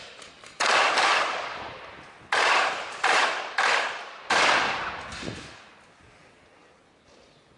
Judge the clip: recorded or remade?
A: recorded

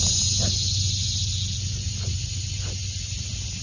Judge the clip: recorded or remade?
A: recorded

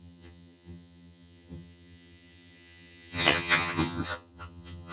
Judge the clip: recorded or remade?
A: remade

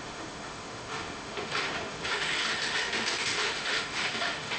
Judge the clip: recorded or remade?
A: remade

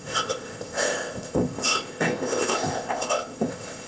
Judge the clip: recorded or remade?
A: remade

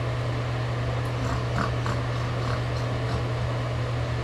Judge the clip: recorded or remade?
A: recorded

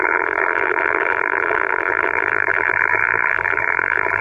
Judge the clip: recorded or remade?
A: remade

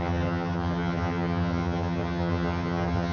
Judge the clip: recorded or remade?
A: remade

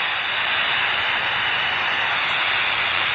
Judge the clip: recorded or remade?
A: remade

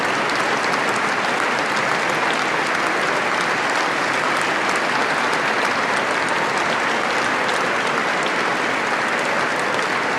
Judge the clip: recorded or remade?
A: recorded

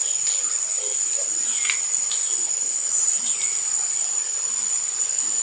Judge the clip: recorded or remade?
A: recorded